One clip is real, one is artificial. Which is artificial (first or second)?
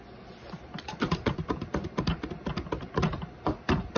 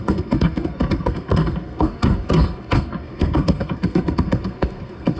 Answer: second